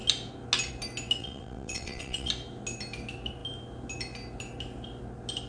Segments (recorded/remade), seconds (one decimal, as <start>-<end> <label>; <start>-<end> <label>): 0.0-1.2 recorded; 1.2-2.3 remade; 2.3-5.5 recorded